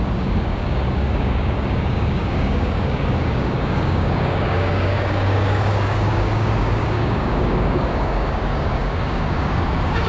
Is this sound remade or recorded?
remade